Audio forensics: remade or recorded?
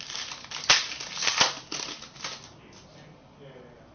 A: recorded